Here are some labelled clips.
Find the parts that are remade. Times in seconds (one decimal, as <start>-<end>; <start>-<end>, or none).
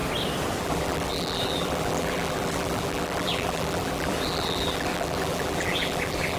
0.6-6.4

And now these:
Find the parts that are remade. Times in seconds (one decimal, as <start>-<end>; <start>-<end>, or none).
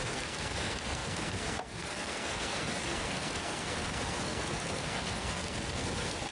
0.0-6.3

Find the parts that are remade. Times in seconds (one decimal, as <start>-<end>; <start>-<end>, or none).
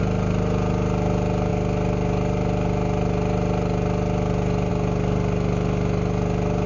none